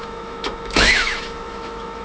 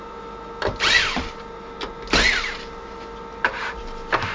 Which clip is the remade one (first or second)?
first